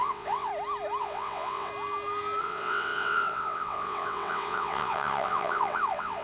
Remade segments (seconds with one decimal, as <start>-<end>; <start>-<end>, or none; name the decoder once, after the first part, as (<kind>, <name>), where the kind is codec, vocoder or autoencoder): 0.0-0.5 (vocoder, WaveNeXt); 1.0-1.7; 2.4-6.2